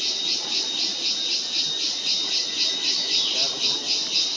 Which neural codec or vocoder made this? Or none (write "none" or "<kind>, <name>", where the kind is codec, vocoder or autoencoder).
none